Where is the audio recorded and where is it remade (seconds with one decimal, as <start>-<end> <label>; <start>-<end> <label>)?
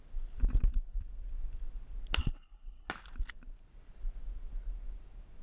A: 0.0-2.2 recorded; 2.2-2.9 remade; 2.9-5.4 recorded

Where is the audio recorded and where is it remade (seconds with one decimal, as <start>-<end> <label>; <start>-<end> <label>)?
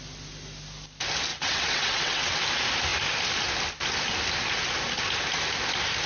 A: 0.0-1.3 recorded; 1.3-2.4 remade; 2.4-6.1 recorded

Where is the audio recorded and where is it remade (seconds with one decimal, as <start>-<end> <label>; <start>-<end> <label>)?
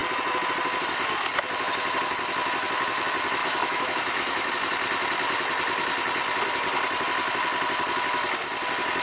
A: 0.0-3.4 recorded; 3.4-4.5 remade; 4.5-9.0 recorded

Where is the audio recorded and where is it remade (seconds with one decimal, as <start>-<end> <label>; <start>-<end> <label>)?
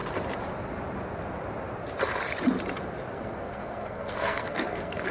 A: 0.0-3.1 recorded; 3.1-5.1 remade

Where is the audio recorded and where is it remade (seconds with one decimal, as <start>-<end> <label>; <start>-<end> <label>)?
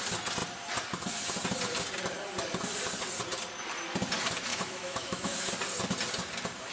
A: 0.0-4.5 recorded; 4.5-5.5 remade; 5.5-6.7 recorded